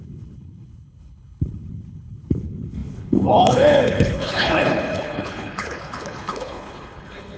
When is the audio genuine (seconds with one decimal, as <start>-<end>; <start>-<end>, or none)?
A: none